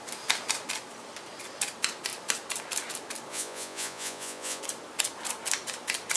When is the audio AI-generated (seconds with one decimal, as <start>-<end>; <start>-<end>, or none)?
3.3-4.6